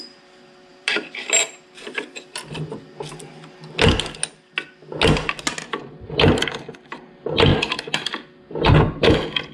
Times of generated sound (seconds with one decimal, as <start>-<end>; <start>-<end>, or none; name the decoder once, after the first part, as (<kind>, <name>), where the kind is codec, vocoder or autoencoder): 0.7-1.4 (vocoder, BigVGAN v2)